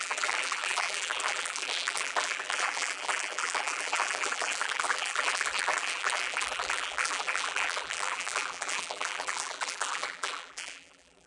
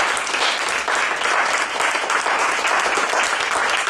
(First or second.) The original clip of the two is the second